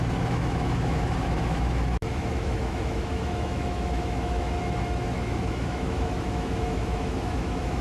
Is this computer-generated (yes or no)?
yes